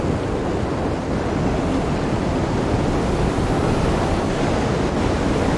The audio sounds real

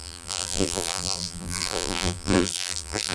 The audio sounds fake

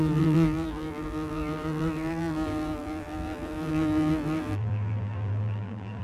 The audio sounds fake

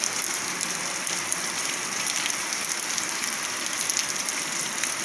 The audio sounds fake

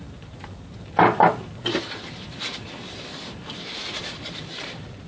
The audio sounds fake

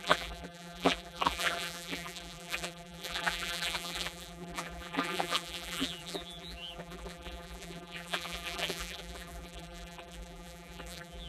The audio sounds fake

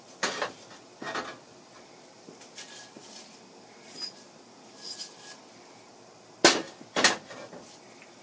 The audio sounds real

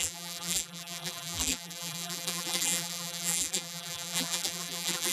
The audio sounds fake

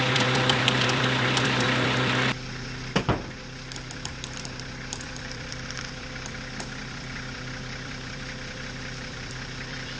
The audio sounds fake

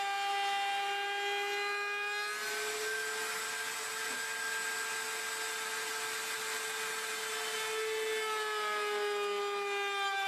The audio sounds real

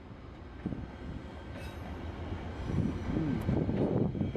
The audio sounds real